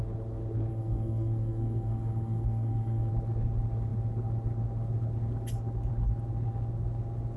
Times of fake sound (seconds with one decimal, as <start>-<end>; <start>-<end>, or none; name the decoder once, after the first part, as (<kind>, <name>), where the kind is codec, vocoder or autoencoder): 0.7-3.1 (codec, SNAC)